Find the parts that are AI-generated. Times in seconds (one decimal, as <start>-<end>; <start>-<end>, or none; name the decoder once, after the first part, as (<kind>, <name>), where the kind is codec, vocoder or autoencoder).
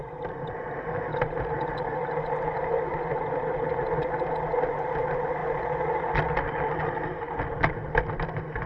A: none